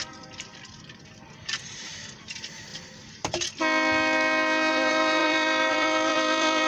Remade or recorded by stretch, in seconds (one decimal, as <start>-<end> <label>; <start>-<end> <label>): 0.0-2.7 remade; 2.7-4.7 recorded; 4.7-6.7 remade